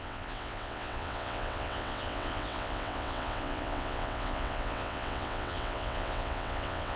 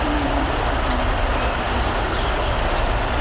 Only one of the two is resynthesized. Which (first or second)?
first